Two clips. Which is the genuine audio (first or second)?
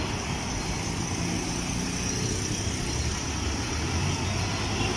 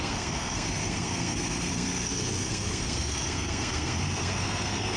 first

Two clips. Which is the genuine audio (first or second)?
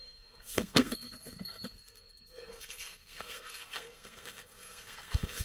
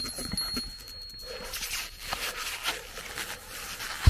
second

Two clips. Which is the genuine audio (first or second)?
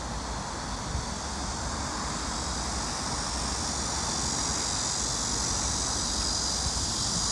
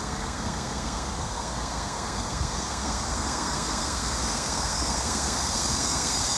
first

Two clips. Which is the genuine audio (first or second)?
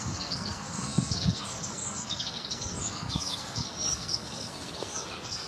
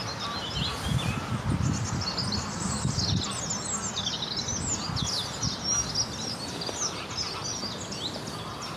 second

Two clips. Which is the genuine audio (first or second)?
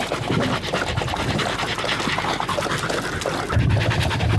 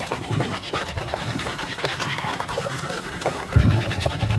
first